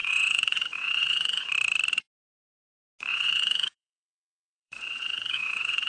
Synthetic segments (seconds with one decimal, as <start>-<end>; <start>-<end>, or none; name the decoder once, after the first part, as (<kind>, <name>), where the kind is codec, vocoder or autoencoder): 0.0-1.5 (vocoder, WaveNeXt); 3.1-5.9